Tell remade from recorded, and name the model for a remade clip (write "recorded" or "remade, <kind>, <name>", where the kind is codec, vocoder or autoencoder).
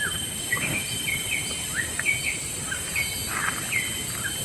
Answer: recorded